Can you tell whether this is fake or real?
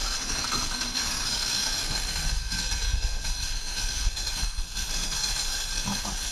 fake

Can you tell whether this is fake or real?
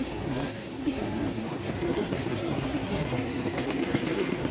fake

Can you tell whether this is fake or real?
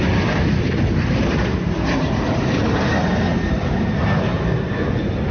real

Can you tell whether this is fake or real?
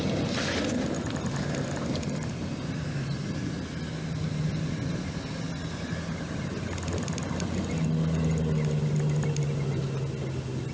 real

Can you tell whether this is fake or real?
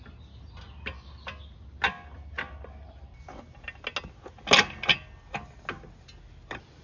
real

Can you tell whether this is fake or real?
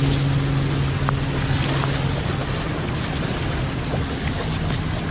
real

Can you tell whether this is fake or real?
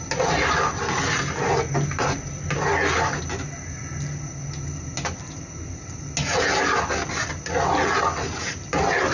real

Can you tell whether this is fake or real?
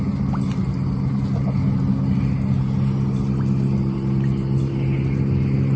real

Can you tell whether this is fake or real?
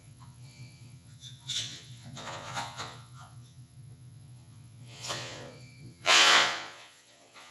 fake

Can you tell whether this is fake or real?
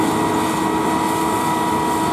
real